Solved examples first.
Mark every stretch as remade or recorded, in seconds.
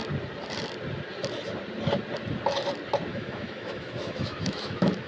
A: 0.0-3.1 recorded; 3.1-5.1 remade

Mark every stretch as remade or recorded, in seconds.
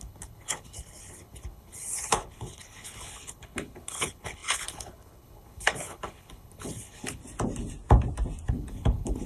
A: 0.0-7.2 remade; 7.2-8.5 recorded; 8.5-9.3 remade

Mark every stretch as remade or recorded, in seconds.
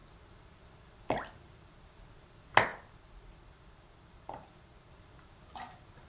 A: 0.0-6.1 recorded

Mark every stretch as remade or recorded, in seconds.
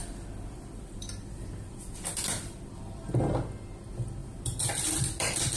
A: 0.0-3.0 remade; 3.0-4.2 recorded; 4.2-5.6 remade